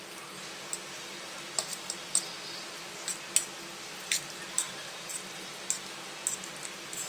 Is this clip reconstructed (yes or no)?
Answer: no